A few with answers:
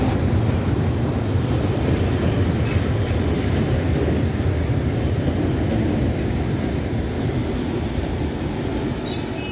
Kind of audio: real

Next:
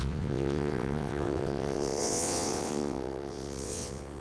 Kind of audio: fake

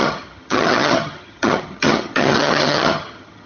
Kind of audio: fake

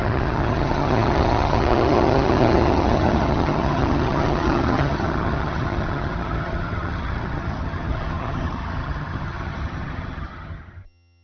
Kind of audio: fake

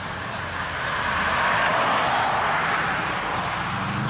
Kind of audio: real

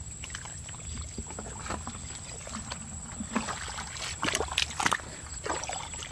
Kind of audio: real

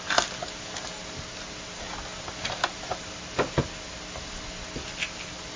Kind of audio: real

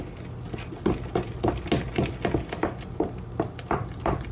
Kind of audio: real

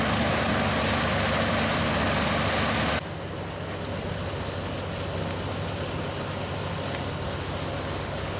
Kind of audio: real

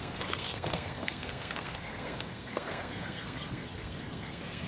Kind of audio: fake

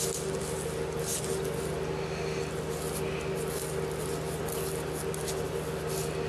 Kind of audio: real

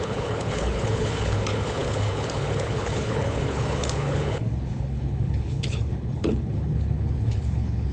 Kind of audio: fake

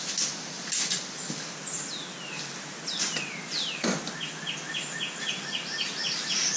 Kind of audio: real